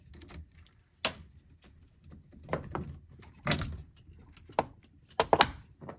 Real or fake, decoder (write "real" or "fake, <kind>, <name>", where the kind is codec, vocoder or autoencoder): real